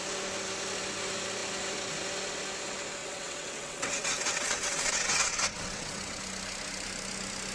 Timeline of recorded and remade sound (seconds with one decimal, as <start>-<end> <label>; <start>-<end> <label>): 0.0-3.0 recorded; 3.0-6.2 remade; 6.2-7.5 recorded